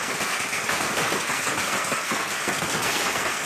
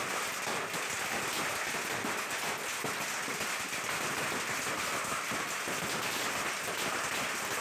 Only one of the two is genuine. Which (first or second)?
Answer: second